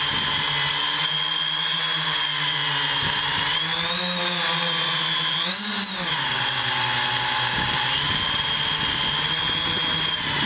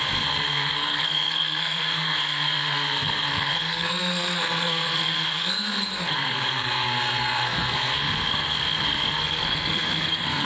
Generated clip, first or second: second